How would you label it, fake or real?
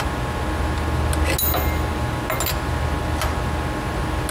real